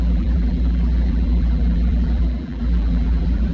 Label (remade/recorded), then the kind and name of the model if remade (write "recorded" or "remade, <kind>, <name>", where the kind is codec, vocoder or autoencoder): remade, vocoder, BigVGAN v2